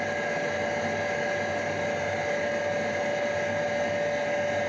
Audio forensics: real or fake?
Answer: real